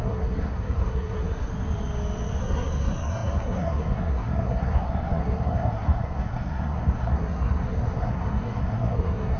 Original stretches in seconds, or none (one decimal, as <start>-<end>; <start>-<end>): 1.5-2.4